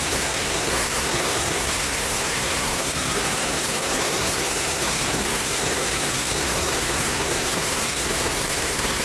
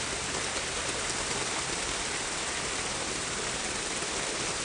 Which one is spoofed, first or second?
first